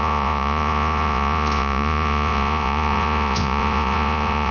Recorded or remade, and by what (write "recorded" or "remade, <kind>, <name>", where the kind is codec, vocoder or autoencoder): remade, vocoder, Vocos